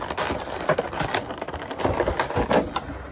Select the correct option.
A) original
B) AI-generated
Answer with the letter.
A